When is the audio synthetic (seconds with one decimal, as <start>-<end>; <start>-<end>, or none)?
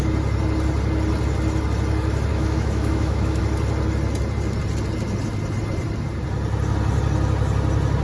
2.3-3.4